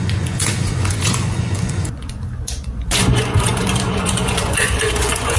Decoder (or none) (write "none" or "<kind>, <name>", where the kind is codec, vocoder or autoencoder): vocoder, Vocos